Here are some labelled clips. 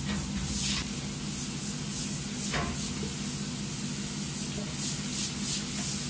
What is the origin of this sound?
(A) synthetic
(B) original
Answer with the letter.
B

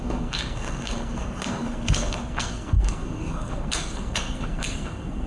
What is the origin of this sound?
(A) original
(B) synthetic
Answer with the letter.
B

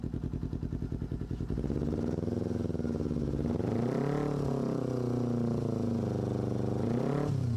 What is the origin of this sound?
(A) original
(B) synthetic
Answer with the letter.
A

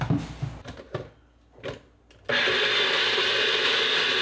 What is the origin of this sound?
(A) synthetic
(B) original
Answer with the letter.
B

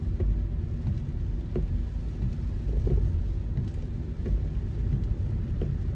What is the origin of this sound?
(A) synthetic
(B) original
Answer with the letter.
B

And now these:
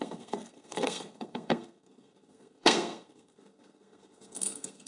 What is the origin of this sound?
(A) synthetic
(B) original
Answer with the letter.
A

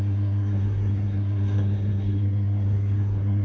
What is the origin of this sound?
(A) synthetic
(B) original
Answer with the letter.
A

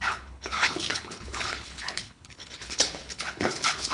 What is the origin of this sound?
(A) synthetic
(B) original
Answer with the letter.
A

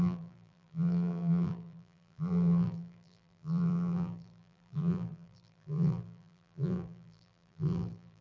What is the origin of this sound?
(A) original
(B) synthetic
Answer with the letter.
B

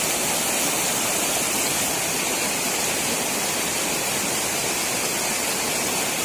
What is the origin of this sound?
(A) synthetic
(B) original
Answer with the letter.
B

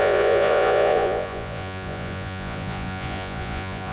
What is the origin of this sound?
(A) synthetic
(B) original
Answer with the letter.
A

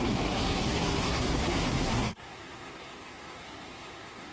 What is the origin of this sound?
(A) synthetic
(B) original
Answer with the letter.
A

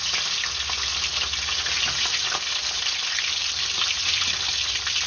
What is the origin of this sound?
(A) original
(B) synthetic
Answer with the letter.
A